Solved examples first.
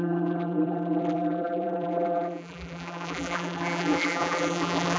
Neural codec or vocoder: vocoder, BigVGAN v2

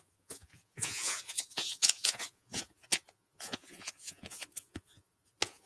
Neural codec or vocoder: vocoder, Vocos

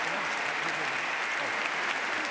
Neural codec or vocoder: none